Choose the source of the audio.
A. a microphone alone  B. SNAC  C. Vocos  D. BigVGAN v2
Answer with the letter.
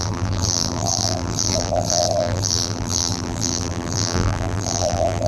D